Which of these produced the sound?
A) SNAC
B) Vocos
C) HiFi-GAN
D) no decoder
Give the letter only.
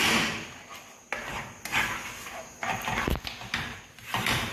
D